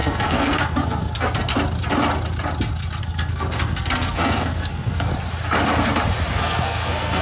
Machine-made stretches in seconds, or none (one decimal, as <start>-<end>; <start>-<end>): 0.0-1.5; 3.0-5.1; 6.3-7.2